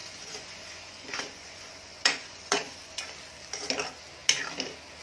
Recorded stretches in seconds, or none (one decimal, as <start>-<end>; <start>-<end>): 3.0-5.0